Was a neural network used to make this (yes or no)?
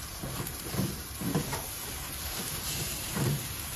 yes